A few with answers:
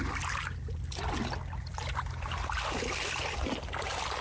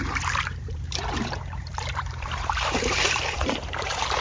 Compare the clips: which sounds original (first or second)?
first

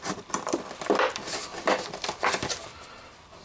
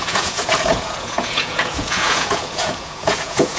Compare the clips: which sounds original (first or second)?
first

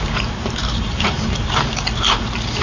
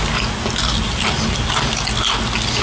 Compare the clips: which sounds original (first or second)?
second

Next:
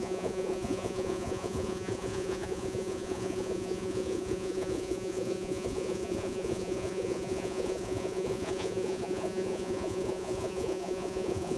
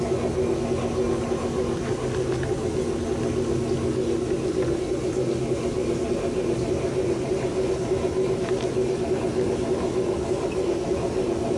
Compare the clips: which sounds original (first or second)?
second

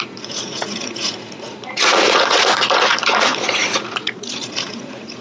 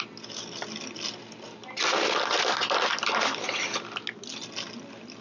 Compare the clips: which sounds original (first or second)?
second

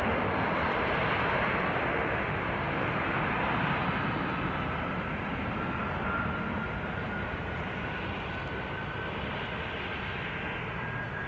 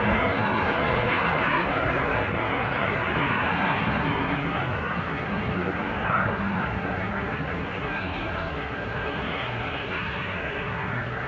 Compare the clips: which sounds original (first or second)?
first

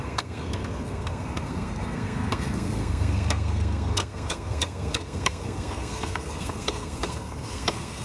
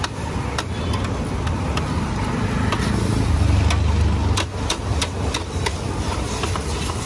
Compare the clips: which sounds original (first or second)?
second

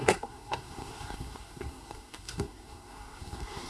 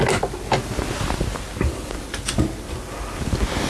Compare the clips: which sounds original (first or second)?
second